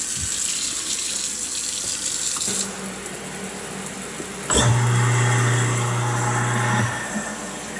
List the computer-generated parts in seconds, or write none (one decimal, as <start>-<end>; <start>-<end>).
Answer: 0.5-1.1